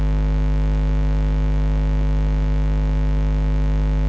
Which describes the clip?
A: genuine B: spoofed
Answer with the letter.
A